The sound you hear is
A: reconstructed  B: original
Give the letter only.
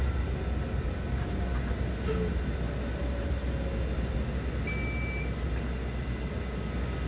B